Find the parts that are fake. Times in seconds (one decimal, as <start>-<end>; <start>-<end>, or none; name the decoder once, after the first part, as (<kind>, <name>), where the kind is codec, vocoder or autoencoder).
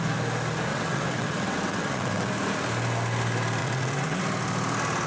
0.7-2.3 (vocoder, WaveNeXt); 3.6-4.2